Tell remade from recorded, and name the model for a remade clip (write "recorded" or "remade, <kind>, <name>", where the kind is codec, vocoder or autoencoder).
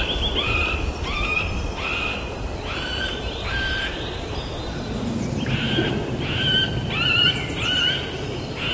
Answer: recorded